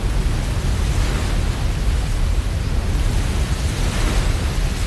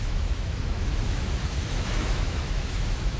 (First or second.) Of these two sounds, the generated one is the second